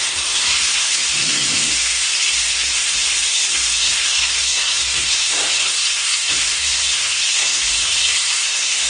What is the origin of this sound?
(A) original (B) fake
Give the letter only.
B